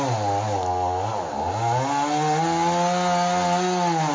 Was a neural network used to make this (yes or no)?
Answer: no